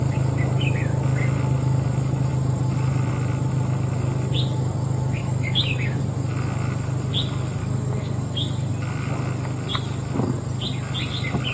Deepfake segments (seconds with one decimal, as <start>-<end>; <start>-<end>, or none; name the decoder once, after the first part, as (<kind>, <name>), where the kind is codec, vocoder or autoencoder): 5.2-6.0 (codec, DAC); 7.6-8.7